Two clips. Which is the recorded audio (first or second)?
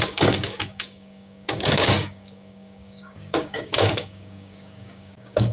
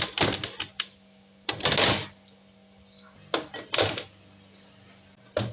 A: second